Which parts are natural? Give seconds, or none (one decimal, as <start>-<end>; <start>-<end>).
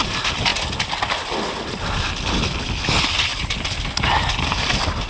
0.0-3.3; 3.9-5.1